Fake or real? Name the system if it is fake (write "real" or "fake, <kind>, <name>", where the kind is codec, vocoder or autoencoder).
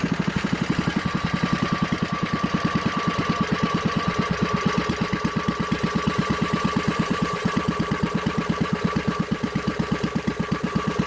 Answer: fake, vocoder, BigVGAN v2